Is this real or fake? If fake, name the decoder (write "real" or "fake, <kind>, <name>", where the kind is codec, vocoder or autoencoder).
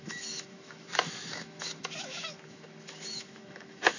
fake, autoencoder, DAC-VAE